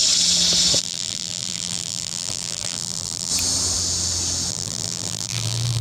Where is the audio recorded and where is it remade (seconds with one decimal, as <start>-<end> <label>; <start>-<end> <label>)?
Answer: 0.0-0.8 recorded; 0.8-3.3 remade; 3.3-4.5 recorded; 4.5-5.8 remade